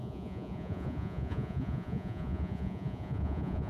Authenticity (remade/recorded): remade